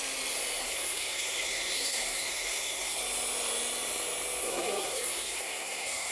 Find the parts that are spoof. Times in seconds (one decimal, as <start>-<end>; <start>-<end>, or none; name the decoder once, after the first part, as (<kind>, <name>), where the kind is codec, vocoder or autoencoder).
0.6-3.0 (codec, SNAC); 4.4-6.1